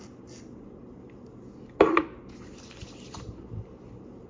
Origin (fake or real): real